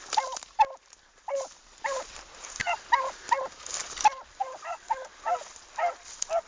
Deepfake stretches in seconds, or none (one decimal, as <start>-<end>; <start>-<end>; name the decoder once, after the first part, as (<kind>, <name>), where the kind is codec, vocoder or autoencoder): none